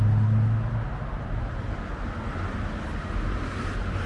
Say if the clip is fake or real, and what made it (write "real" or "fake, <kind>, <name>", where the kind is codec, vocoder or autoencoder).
real